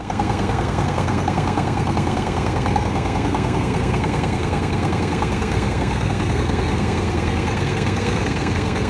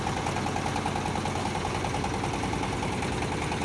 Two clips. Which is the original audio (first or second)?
second